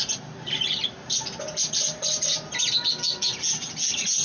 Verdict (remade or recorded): recorded